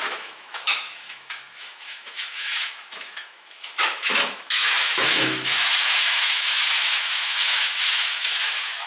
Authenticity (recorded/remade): remade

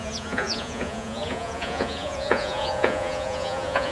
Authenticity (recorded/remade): remade